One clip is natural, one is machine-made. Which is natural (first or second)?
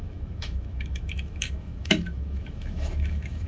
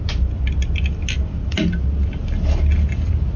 second